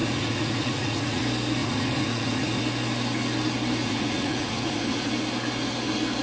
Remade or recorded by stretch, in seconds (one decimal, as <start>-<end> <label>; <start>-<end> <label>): 0.0-1.2 remade; 1.2-1.6 recorded; 1.6-2.6 remade; 2.6-3.8 recorded; 3.8-5.1 remade; 5.1-6.2 recorded